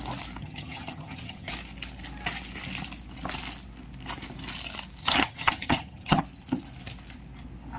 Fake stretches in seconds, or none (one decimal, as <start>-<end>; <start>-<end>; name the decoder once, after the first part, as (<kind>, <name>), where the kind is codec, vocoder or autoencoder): 0.4-1.5 (vocoder, HiFi-GAN); 5.0-6.2